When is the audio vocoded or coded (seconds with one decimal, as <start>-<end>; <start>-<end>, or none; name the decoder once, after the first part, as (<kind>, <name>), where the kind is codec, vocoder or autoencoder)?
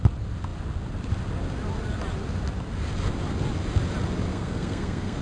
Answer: 4.3-5.2 (codec, SNAC)